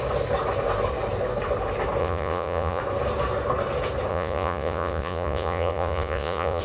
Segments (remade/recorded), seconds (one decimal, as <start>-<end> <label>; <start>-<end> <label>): 0.0-2.0 recorded; 2.0-2.8 remade; 2.8-4.1 recorded; 4.1-6.6 remade